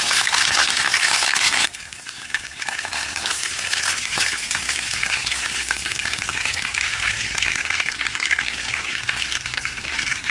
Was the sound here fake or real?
fake